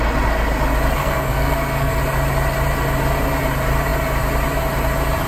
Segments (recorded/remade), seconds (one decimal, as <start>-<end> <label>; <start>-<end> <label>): 0.0-1.0 recorded; 1.0-2.0 remade; 2.0-5.3 recorded